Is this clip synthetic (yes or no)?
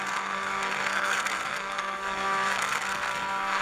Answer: yes